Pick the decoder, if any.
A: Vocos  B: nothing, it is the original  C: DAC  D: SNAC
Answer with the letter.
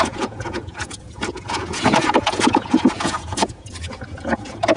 A